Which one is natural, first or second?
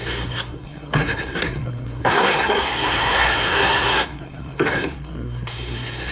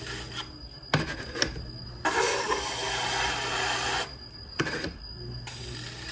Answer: second